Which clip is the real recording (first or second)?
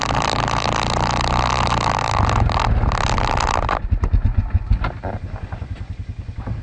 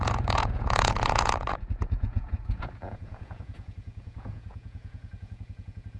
first